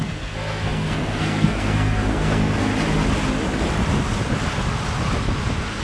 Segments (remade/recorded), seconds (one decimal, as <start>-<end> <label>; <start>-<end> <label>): 0.0-2.7 remade; 2.7-5.8 recorded